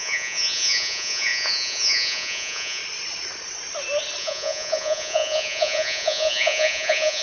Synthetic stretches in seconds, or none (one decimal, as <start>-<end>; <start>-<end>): 0.0-2.8; 4.2-7.2